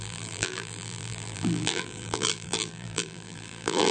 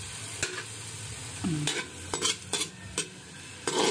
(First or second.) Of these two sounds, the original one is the second